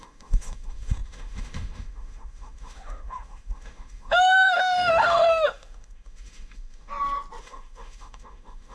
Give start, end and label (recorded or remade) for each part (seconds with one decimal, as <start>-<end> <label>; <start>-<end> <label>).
0.0-6.9 remade; 6.9-7.4 recorded; 7.4-8.7 remade